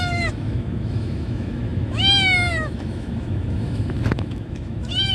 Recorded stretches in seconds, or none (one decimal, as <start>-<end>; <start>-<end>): none